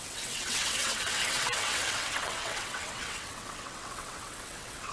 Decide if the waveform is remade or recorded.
remade